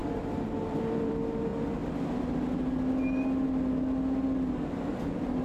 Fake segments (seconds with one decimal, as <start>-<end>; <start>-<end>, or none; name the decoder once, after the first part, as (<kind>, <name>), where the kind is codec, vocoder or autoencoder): 0.6-1.5 (vocoder, BigVGAN v2); 4.7-5.4